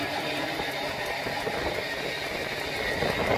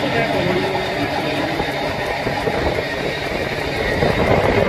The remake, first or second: second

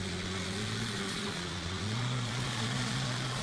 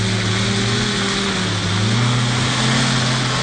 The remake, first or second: first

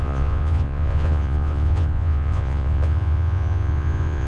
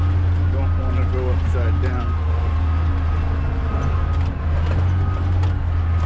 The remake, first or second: first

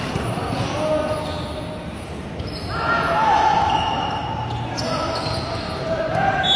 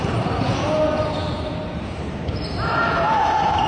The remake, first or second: second